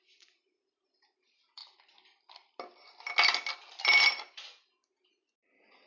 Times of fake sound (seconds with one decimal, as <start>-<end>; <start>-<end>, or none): 0.0-1.6; 5.1-5.9